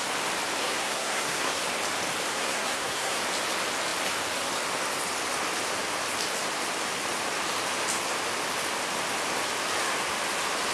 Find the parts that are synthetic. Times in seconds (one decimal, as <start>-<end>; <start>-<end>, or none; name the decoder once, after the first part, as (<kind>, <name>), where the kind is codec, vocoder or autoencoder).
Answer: 0.6-1.6 (codec, SNAC); 2.3-3.2